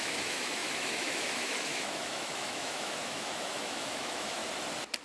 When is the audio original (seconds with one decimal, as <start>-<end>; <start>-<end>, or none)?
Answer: 4.4-5.0